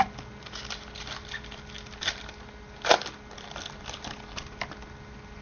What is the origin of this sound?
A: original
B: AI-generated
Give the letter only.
A